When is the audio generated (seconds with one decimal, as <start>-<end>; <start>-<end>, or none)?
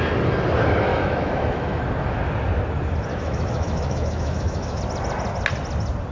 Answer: 0.9-1.8; 3.1-4.8